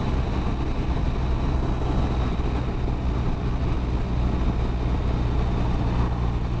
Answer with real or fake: real